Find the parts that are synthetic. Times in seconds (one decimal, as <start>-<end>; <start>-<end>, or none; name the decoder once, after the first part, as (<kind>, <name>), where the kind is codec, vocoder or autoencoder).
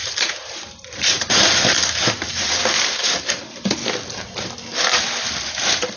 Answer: 0.0-3.8 (vocoder, BigVGAN v2); 5.4-6.0